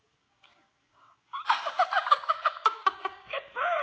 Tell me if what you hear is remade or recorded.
remade